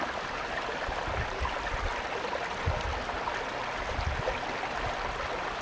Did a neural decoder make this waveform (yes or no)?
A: no